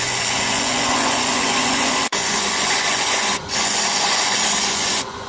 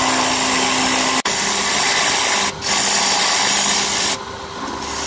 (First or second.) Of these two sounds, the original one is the second